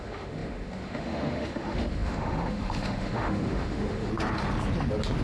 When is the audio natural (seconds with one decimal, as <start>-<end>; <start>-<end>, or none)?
4.1-5.2